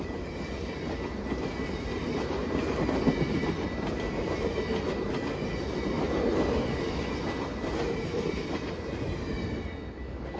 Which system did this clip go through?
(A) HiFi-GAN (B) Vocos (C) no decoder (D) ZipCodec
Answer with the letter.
C